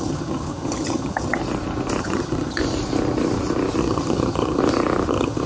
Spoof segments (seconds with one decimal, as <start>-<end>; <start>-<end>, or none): 0.0-1.4; 2.0-2.6; 3.8-4.6; 5.1-5.5